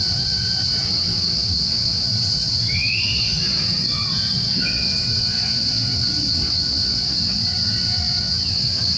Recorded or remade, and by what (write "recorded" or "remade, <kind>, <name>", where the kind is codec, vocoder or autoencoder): remade, vocoder, WaveNeXt